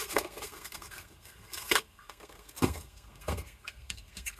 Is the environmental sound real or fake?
fake